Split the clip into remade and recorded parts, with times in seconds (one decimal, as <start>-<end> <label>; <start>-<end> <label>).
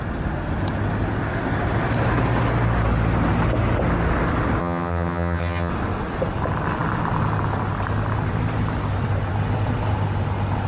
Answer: 0.0-4.6 recorded; 4.6-5.7 remade; 5.7-10.7 recorded